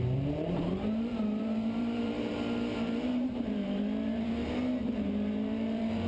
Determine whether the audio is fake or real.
fake